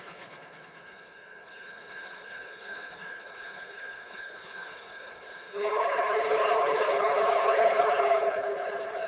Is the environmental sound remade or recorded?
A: remade